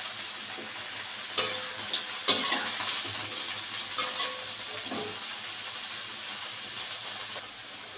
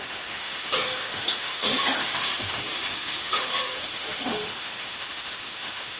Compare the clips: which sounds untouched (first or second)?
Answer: first